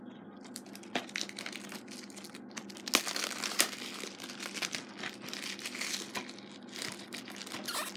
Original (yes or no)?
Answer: yes